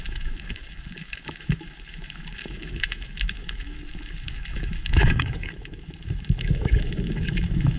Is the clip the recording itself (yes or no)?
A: no